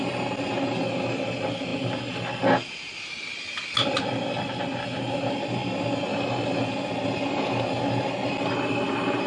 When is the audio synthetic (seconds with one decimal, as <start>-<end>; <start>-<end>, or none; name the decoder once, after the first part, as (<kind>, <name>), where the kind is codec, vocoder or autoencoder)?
none

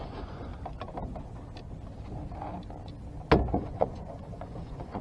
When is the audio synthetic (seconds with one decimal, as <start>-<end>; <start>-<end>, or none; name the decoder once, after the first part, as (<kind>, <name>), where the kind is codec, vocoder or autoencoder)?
0.0-0.5 (vocoder, Vocos); 3.5-5.0

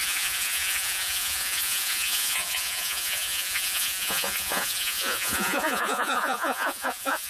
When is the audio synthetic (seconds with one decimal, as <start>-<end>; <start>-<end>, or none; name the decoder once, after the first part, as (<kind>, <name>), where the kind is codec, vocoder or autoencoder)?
0.0-7.3 (vocoder, Vocos)

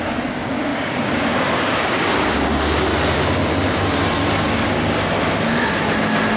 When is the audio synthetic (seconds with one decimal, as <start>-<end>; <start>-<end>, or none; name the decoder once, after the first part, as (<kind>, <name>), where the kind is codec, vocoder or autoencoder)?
0.0-2.9 (codec, DAC)